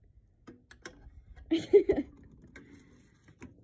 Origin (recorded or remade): recorded